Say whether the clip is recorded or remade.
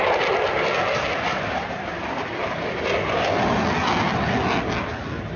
recorded